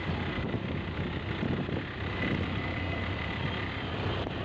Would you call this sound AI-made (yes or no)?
no